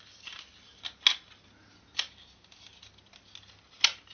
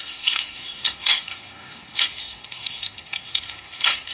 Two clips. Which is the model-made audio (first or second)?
second